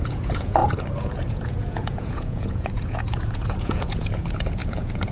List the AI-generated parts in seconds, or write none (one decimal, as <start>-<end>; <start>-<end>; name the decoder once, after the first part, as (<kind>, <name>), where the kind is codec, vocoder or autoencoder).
0.0-5.1 (vocoder, Vocos)